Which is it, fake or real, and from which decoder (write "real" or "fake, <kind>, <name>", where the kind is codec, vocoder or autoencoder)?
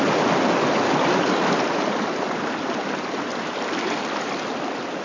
real